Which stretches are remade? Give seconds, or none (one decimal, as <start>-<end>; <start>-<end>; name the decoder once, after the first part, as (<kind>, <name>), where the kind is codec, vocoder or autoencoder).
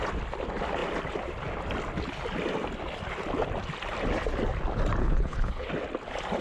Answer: 5.0-5.7 (codec, HILCodec)